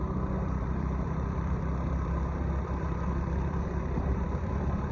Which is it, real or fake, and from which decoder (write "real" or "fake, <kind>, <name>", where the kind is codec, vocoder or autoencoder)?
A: fake, vocoder, BigVGAN v2